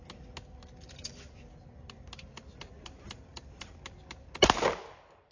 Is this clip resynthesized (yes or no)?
no